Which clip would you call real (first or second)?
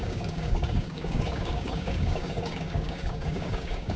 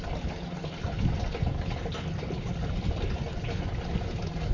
second